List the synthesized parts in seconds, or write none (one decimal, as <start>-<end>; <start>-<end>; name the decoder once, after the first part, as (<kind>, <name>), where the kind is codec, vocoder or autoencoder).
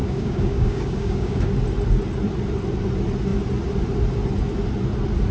0.0-1.5 (codec, DAC)